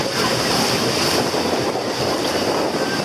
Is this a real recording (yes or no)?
yes